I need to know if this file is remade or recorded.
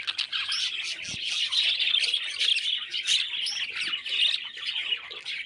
recorded